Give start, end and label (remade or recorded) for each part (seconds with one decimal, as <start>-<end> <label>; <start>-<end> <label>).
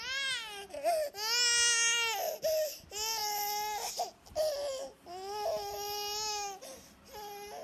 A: 0.0-7.6 recorded